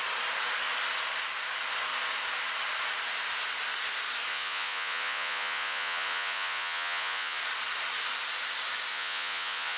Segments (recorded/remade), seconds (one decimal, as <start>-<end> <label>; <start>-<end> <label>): 0.0-4.3 recorded; 4.3-7.4 remade; 7.4-8.9 recorded; 8.9-9.8 remade